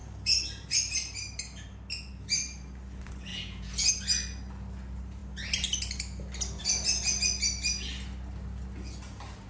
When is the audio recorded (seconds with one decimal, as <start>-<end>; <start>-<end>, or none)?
0.0-3.3; 3.9-9.5